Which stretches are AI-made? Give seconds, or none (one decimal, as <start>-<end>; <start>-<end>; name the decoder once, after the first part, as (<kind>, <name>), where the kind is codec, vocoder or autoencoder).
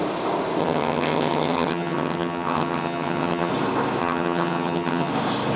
0.6-3.5 (vocoder, HiFi-GAN); 4.0-5.1